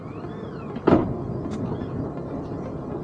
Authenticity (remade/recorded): recorded